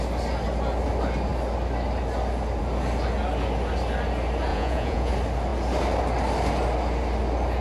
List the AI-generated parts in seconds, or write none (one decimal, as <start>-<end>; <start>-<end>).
4.5-5.1